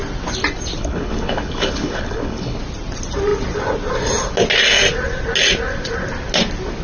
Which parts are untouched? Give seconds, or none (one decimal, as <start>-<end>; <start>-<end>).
0.0-0.8; 2.6-6.8